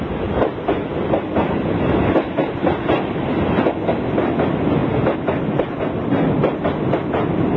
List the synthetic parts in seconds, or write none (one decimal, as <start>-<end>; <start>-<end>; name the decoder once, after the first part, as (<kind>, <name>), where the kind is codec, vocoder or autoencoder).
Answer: none